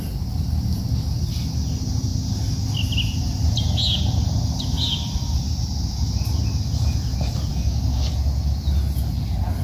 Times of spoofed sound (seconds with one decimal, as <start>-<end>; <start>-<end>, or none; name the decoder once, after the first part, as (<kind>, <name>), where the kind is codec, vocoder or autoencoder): 7.5-8.1 (codec, DAC)